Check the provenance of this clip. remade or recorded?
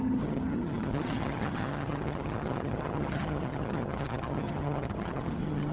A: remade